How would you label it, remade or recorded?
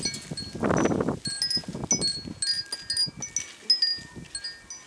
recorded